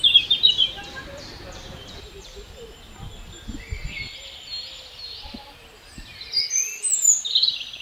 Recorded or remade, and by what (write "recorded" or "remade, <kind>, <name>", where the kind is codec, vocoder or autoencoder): recorded